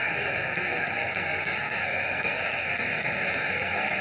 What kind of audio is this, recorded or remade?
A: remade